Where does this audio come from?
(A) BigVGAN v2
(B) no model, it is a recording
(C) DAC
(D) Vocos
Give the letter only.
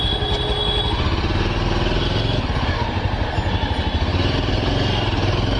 B